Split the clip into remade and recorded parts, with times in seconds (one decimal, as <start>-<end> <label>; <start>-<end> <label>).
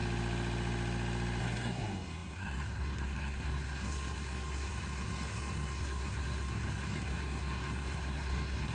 0.0-1.4 recorded; 1.4-8.7 remade